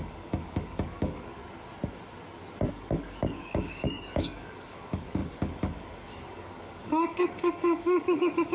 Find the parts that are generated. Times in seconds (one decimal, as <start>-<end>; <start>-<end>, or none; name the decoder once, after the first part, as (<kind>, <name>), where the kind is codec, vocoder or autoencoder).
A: 0.0-1.4 (codec, DAC); 2.7-8.5